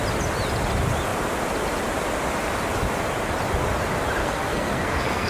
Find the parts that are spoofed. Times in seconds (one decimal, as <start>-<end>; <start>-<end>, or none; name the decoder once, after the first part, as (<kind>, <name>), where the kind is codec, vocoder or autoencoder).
4.2-5.3 (codec, SNAC)